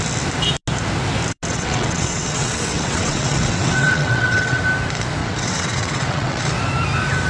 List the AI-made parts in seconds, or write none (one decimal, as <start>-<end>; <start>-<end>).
1.5-4.6; 5.2-6.4